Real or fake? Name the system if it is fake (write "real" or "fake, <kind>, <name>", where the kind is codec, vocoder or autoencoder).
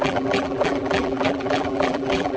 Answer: fake, vocoder, BigVGAN v2